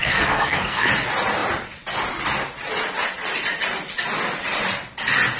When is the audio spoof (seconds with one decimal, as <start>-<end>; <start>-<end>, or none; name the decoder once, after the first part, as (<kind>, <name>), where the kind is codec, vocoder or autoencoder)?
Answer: 0.0-0.9 (codec, SNAC)